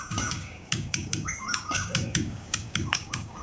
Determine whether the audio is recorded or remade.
remade